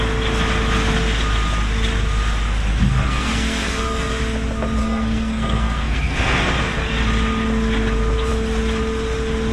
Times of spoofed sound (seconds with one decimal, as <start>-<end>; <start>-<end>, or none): 2.7-4.2; 4.8-6.5

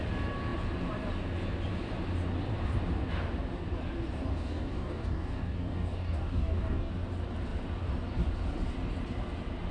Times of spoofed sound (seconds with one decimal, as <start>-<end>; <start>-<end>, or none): 4.3-6.9

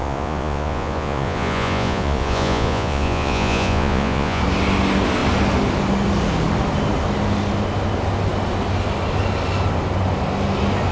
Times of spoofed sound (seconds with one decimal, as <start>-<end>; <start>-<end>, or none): 0.0-4.4

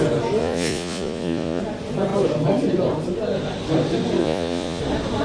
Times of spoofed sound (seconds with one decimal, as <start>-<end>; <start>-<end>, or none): 0.4-1.6; 4.2-4.8

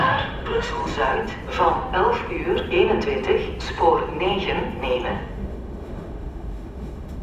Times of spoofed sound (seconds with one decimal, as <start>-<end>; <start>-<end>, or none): 0.0-0.8; 5.1-7.2

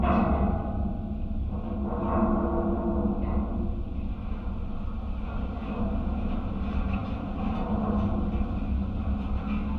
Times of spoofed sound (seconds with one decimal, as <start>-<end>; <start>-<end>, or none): none

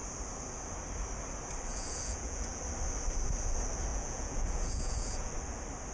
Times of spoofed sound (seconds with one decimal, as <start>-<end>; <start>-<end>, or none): 1.7-2.6; 3.9-5.3

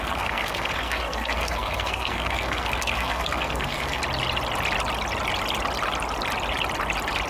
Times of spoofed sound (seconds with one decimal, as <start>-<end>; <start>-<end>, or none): 0.0-4.0